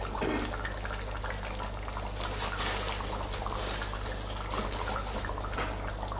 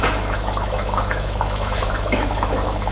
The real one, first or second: first